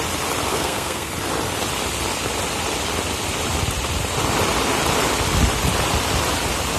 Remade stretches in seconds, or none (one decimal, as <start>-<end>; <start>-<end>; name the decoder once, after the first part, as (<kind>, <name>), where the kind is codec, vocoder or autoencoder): 0.5-1.1 (codec, SNAC)

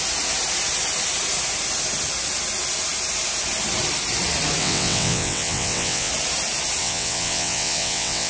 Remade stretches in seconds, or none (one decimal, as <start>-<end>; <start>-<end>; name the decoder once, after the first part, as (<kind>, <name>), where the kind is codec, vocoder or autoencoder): 4.6-6.1 (vocoder, WaveNeXt); 6.8-8.3

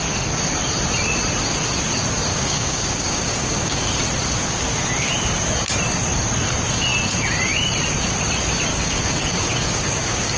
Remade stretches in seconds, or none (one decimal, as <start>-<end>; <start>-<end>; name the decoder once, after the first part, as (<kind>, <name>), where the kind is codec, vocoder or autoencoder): 2.3-4.0 (codec, DAC); 8.7-10.4

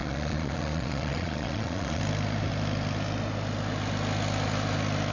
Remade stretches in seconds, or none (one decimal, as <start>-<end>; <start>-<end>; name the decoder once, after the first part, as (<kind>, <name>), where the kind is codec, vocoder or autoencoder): 0.0-2.0 (vocoder, Vocos)